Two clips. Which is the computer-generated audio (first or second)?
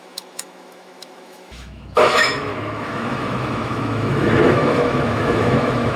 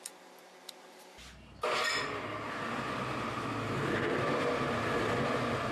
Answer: first